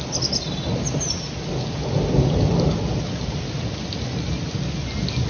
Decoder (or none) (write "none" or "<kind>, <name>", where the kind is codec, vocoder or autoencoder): none